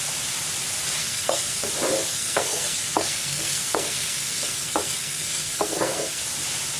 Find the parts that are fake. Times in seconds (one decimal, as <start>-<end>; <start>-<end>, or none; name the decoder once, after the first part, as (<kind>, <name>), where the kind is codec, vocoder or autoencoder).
1.0-1.7 (codec, SNAC); 2.1-6.2